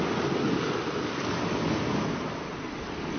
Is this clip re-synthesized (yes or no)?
no